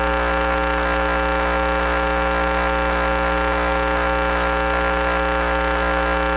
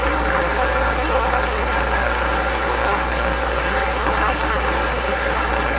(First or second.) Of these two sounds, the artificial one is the second